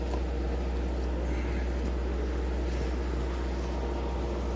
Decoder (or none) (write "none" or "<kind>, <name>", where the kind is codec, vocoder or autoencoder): none